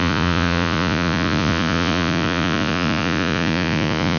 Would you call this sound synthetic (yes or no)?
yes